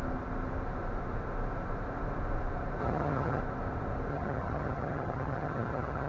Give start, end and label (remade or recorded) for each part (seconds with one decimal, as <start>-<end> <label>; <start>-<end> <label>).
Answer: 0.0-2.8 recorded; 2.8-3.4 remade; 3.4-4.1 recorded; 4.1-6.1 remade